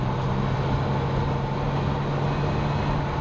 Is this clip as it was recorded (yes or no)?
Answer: yes